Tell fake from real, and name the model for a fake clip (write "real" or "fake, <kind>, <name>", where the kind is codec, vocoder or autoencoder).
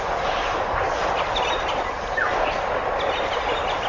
real